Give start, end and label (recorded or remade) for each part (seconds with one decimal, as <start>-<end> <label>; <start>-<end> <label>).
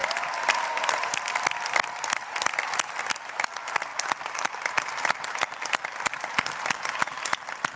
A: 0.0-3.9 recorded; 3.9-7.8 remade